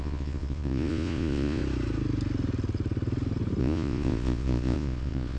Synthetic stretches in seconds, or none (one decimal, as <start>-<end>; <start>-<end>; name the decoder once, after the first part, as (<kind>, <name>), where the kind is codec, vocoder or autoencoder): 0.0-1.6 (vocoder, Vocos); 3.6-5.4